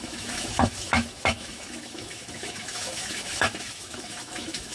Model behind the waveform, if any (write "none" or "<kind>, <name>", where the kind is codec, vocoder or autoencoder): autoencoder, DAC-VAE